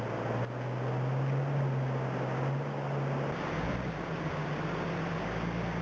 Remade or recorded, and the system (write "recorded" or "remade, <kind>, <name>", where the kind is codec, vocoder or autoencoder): recorded